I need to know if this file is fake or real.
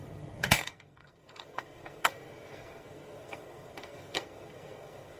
fake